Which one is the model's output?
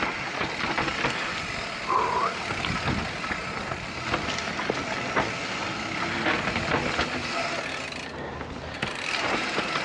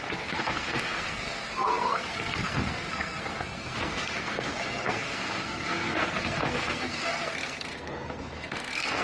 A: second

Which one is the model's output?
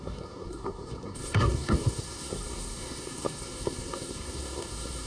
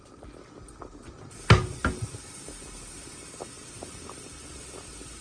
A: first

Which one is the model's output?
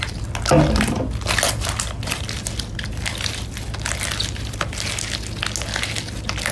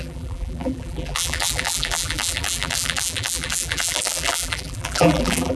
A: second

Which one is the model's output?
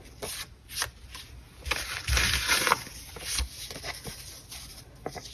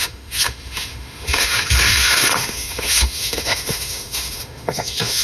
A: second